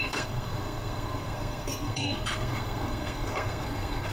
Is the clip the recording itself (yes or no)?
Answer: no